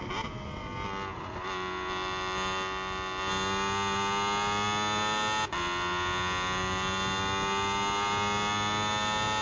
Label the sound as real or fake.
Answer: real